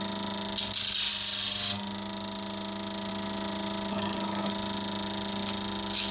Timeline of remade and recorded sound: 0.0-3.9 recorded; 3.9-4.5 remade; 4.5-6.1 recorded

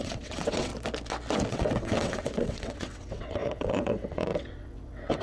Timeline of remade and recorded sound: 0.0-0.7 remade; 0.7-1.5 recorded; 1.5-5.2 remade

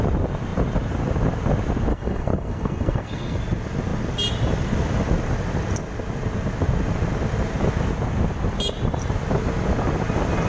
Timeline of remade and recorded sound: 0.0-1.9 recorded; 1.9-3.4 remade; 3.4-10.5 recorded